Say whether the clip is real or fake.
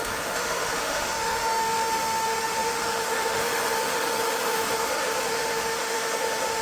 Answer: fake